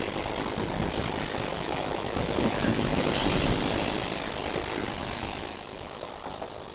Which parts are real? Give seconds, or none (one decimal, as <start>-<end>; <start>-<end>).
0.0-1.5; 3.1-5.0; 6.1-6.7